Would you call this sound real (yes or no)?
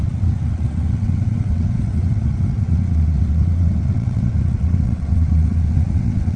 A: no